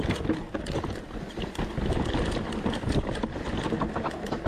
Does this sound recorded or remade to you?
remade